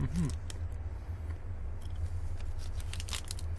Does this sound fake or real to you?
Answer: real